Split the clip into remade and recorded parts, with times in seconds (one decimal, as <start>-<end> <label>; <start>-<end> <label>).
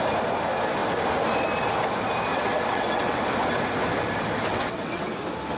0.0-2.3 recorded; 2.3-3.2 remade; 3.2-4.5 recorded; 4.5-5.1 remade; 5.1-5.6 recorded